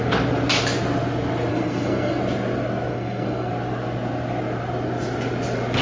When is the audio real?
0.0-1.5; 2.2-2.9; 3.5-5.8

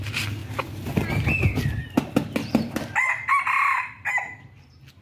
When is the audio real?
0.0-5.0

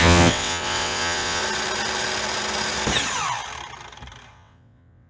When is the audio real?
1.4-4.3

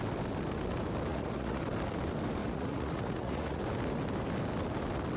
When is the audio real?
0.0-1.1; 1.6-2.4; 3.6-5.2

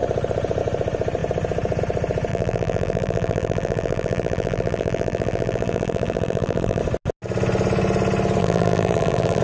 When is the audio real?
0.0-2.3; 6.8-8.4